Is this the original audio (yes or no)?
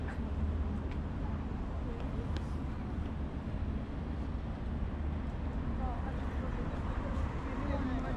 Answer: yes